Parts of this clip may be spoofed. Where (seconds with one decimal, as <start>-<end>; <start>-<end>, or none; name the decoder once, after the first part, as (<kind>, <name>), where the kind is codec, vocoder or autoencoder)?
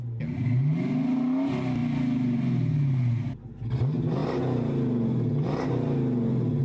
none